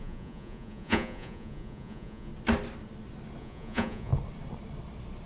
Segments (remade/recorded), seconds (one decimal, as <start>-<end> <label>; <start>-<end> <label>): 0.0-2.3 remade; 2.3-3.4 recorded; 3.4-4.1 remade; 4.1-5.3 recorded